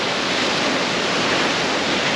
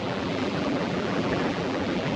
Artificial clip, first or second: second